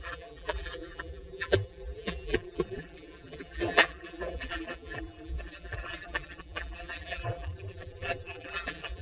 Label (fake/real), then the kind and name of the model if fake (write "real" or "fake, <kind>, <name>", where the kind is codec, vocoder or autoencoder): fake, vocoder, BigVGAN v2